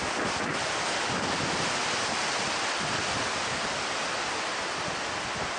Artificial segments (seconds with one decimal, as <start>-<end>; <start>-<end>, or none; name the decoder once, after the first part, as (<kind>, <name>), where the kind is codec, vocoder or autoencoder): none